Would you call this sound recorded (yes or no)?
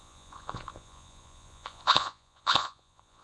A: no